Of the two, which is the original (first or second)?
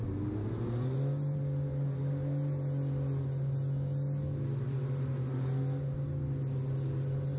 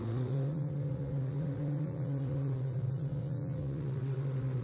first